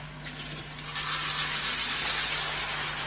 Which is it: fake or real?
real